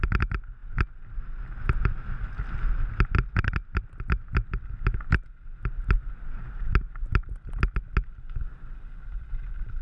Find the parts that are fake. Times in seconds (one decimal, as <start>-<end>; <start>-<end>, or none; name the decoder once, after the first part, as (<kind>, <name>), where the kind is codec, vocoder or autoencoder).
none